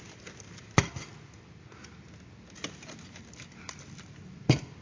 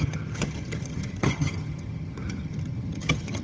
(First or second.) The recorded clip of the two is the first